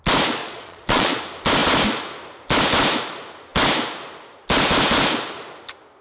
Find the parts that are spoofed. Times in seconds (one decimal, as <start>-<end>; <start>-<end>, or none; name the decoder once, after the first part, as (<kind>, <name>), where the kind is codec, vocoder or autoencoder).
0.4-1.2 (vocoder, Vocos)

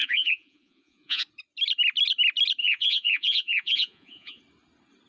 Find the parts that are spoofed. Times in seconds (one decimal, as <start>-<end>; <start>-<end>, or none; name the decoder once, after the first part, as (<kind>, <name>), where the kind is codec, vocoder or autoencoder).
0.0-1.2 (vocoder, Vocos); 2.6-4.4

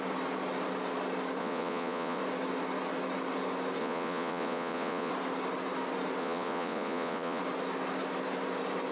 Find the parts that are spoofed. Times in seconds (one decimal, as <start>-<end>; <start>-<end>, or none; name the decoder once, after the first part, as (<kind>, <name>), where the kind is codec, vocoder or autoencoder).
1.4-2.2 (vocoder, Vocos); 3.8-5.1; 6.2-7.4

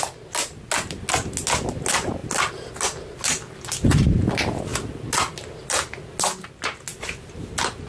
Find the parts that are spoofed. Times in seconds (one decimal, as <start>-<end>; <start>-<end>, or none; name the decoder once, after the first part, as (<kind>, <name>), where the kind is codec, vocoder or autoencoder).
none

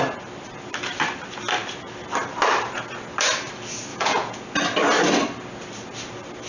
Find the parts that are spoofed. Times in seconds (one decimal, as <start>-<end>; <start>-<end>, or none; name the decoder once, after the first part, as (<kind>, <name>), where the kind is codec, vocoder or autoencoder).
3.9-4.4 (vocoder, Vocos)

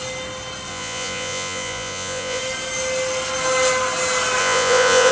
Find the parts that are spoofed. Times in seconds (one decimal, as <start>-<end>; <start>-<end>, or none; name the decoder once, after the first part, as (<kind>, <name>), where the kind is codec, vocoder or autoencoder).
0.7-2.4 (vocoder, Vocos); 4.4-5.1